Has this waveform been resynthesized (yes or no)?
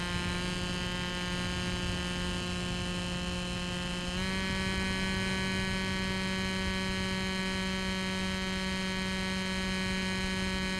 no